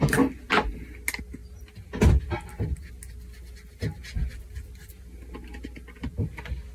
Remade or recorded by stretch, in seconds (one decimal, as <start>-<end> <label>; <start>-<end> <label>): 0.0-6.7 recorded